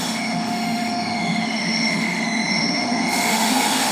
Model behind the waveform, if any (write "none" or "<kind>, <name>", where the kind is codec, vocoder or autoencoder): autoencoder, DAC-VAE